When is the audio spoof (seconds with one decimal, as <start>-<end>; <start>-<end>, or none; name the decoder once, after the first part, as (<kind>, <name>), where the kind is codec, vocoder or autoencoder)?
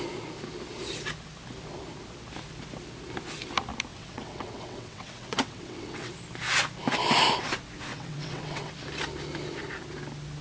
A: 3.9-6.1 (vocoder, WaveNeXt); 7.9-8.7